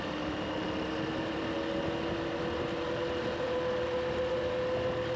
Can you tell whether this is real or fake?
real